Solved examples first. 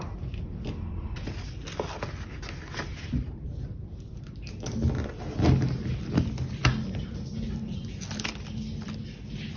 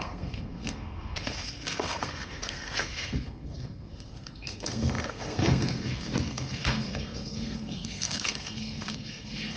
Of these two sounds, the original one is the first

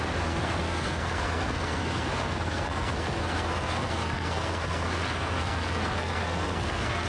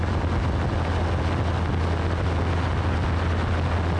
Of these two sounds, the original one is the second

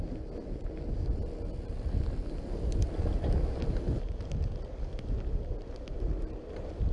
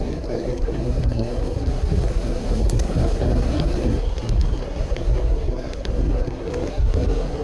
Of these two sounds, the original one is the first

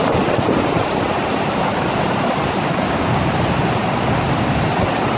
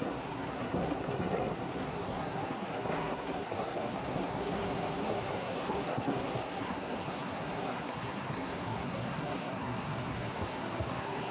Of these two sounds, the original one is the first